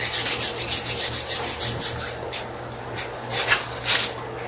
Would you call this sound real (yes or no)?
yes